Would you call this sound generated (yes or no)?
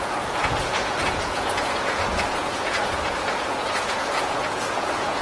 yes